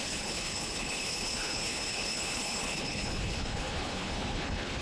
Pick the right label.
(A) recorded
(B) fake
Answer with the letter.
B